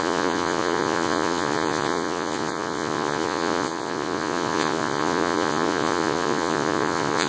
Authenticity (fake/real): fake